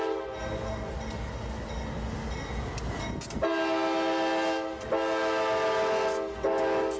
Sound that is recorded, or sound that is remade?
recorded